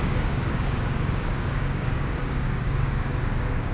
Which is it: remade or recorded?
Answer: remade